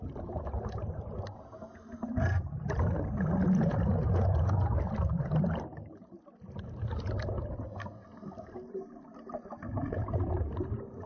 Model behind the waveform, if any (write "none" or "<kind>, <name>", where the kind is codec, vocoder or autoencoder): none